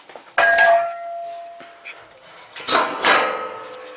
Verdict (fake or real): real